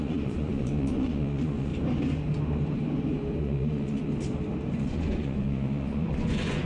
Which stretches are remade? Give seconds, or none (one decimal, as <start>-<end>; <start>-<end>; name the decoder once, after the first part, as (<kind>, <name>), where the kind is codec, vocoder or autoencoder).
0.0-1.7 (vocoder, Vocos); 3.4-4.1; 4.8-6.7